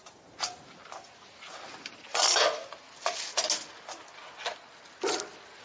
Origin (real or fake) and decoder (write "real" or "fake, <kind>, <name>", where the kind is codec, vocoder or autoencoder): real